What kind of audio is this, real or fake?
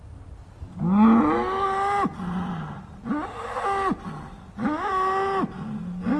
real